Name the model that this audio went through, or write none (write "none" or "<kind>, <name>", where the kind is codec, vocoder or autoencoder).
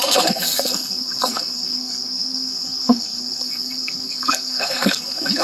codec, SNAC